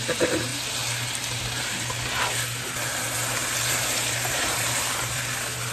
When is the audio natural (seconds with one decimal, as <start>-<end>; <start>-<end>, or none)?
0.5-3.7